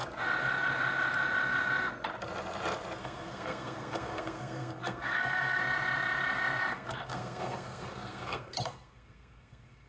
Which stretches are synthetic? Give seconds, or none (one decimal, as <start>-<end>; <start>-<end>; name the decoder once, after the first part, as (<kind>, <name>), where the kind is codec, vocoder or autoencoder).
3.0-5.6 (codec, SNAC); 6.7-9.9